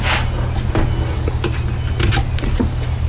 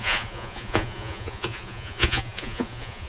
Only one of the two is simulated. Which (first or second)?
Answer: second